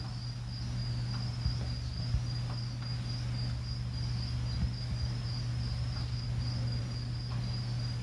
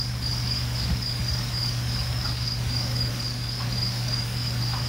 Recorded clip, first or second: first